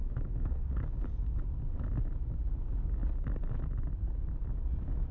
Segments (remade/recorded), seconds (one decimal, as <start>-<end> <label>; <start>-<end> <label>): 0.0-1.1 remade; 1.1-5.1 recorded